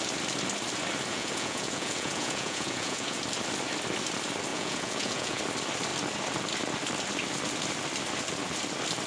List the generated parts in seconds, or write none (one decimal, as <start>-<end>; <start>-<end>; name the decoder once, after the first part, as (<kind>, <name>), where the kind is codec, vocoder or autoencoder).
1.1-3.2 (vocoder, Vocos); 4.5-5.4